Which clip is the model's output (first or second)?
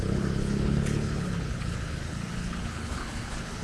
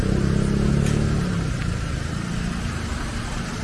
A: first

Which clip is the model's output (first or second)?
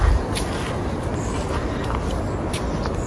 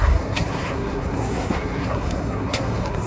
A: second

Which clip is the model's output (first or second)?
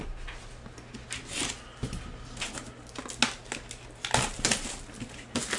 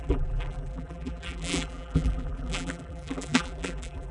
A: second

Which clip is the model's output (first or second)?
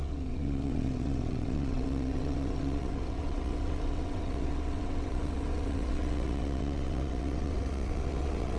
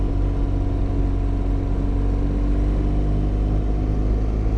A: first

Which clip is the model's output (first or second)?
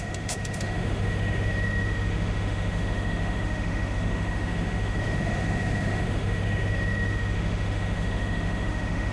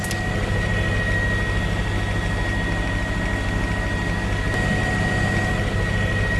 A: first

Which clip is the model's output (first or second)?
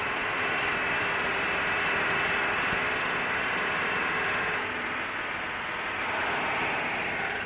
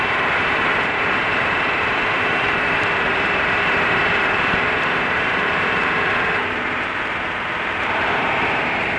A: second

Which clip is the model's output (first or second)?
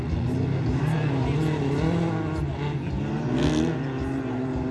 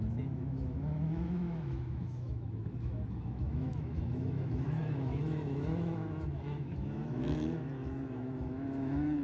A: second